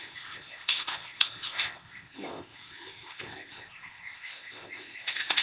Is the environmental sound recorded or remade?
remade